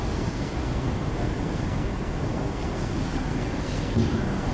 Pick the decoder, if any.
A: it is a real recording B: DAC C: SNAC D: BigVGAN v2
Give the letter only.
C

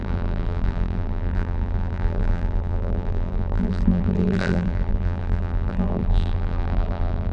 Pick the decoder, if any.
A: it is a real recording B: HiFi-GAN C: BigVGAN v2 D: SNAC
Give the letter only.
C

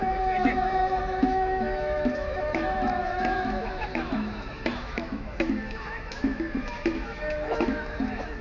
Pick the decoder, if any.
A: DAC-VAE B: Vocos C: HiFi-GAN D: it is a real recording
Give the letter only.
A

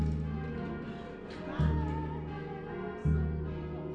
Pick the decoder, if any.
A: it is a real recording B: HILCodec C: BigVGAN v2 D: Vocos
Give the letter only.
A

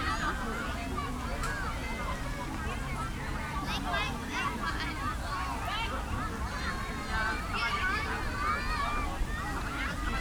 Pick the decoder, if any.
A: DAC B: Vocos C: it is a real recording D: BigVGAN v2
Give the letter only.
C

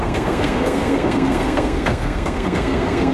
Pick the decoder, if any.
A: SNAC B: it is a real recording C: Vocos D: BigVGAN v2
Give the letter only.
A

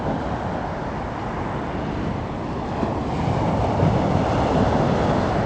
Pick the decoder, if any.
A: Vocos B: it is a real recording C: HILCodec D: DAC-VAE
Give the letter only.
B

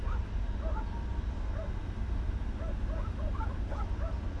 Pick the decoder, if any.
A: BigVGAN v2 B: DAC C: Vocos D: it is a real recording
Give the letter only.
D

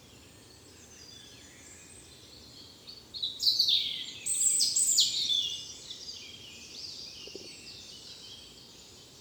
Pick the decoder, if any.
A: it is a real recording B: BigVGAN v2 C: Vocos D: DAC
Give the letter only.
A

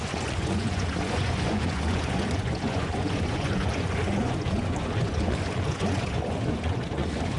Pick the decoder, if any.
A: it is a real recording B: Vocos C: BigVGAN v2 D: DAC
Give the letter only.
B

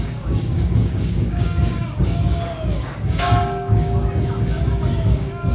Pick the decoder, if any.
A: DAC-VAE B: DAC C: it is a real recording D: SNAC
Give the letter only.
B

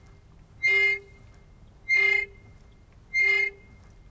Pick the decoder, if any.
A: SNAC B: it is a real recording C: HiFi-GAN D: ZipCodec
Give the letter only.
B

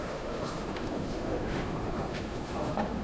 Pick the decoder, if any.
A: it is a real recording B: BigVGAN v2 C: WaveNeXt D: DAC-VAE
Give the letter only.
D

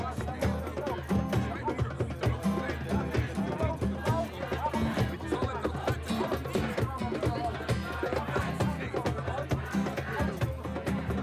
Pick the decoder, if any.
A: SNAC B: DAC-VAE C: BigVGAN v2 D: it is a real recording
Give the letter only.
D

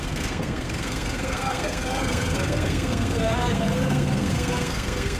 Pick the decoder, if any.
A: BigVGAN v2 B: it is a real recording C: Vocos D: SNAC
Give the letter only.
D